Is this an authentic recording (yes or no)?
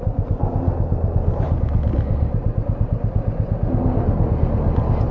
yes